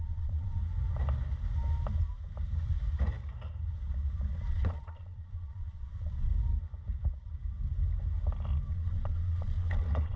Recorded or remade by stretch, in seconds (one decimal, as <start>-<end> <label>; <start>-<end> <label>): 0.0-0.6 remade; 0.6-4.5 recorded; 4.5-6.3 remade; 6.3-8.7 recorded; 8.7-10.2 remade